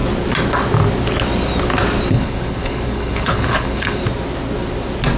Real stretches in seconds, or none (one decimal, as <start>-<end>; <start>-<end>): 0.0-2.1; 4.0-5.2